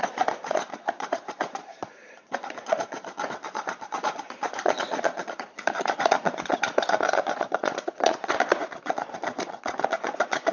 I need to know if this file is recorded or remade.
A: remade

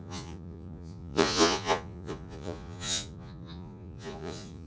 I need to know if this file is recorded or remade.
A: remade